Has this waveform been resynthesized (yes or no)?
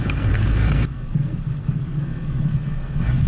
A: yes